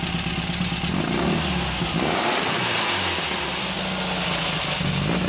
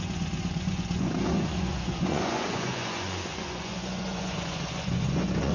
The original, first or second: first